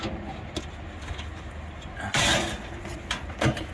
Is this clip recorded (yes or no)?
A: yes